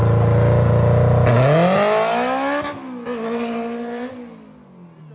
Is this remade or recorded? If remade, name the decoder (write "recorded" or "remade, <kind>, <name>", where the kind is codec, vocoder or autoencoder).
recorded